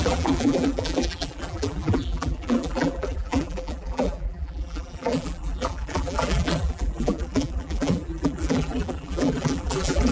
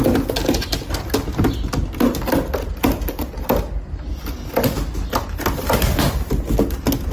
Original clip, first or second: second